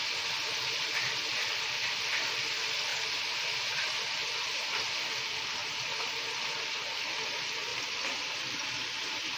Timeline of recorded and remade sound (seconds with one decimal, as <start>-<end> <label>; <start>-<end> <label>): 0.0-2.9 recorded; 2.9-4.8 remade; 4.8-5.6 recorded; 5.6-6.1 remade; 6.1-7.7 recorded; 7.7-8.6 remade; 8.6-9.4 recorded